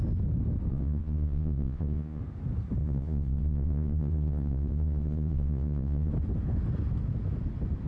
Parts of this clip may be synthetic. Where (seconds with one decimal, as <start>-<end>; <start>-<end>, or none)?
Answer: 0.7-2.2; 2.8-6.1